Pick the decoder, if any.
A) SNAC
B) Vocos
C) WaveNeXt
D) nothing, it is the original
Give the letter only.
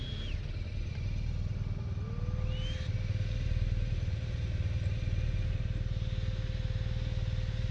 D